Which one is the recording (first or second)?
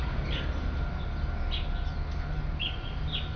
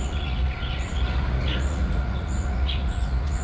first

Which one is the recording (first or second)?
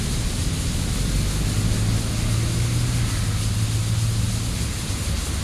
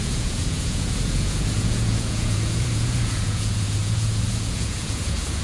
first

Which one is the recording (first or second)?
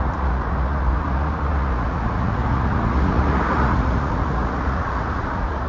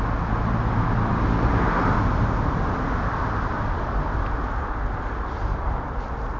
second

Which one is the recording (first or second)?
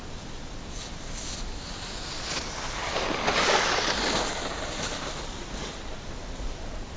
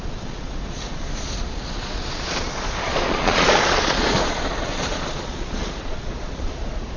first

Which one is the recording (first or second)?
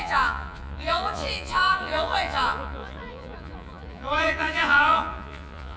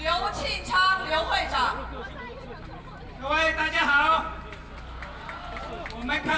second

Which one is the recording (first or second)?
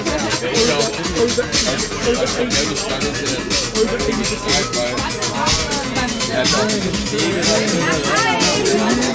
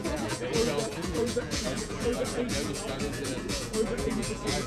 first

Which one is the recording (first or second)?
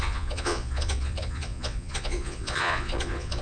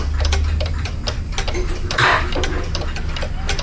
second